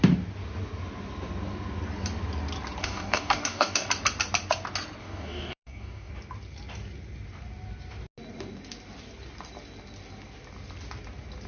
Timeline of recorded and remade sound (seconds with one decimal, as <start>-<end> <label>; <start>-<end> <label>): 0.0-2.8 recorded; 2.8-3.9 remade; 3.9-5.0 recorded; 5.0-6.1 remade; 6.1-11.5 recorded